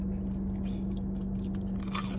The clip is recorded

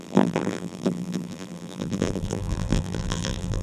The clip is remade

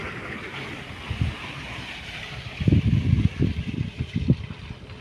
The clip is remade